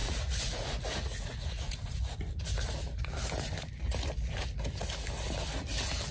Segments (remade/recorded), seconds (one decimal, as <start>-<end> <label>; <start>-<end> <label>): 0.0-2.1 remade; 2.1-6.1 recorded